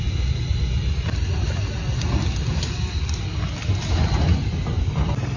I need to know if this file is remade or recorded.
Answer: recorded